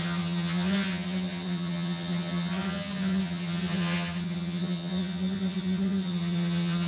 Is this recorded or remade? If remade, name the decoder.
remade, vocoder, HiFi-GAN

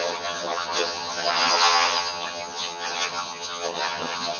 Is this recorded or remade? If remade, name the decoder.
remade, vocoder, HiFi-GAN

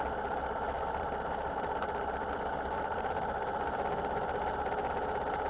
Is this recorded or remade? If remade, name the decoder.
recorded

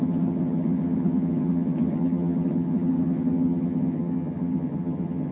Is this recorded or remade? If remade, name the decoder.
remade, vocoder, HiFi-GAN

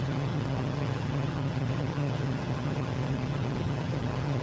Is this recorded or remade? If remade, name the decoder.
remade, vocoder, HiFi-GAN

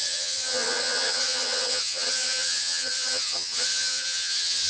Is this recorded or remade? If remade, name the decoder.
remade, vocoder, HiFi-GAN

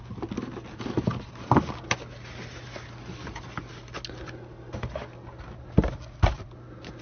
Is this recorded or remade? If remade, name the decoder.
recorded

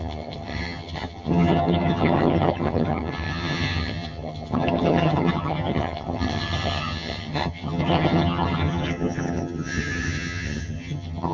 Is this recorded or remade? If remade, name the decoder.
remade, vocoder, HiFi-GAN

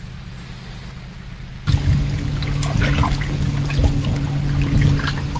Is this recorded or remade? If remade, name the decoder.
recorded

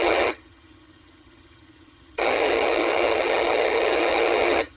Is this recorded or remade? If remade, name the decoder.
remade, vocoder, HiFi-GAN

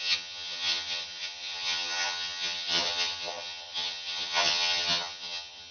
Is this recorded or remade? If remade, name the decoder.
remade, vocoder, HiFi-GAN